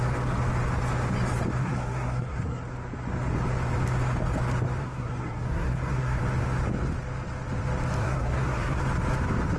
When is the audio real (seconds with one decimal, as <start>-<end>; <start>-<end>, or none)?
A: 0.0-1.6; 2.6-4.8; 6.2-8.0; 8.8-9.6